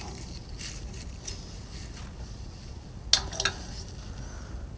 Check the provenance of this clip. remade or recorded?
recorded